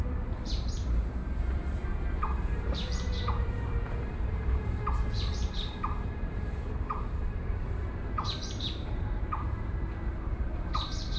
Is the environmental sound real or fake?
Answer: fake